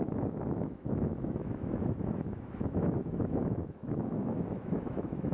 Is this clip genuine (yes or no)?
no